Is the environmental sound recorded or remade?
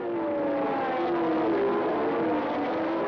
recorded